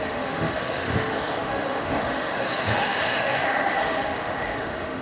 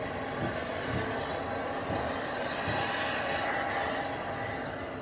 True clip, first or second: second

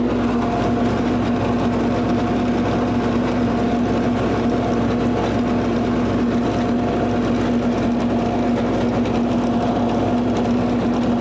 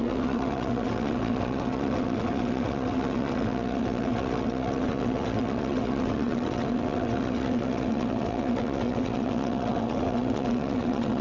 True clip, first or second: first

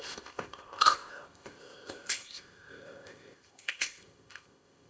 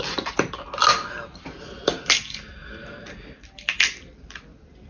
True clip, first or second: second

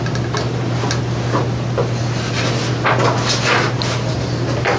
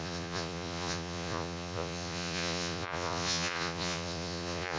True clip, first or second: first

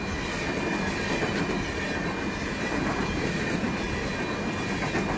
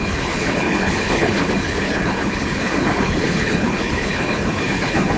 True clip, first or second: first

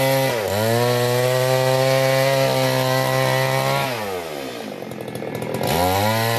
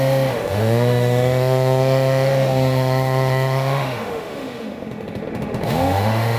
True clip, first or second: first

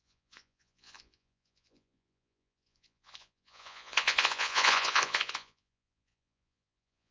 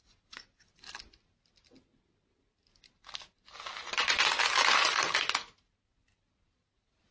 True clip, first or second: second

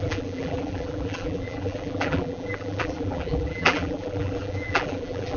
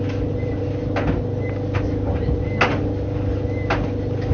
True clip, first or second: second